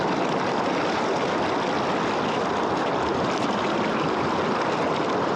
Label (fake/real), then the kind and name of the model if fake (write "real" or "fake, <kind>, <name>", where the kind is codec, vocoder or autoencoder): real